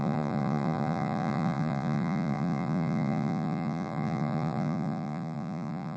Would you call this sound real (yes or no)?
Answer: no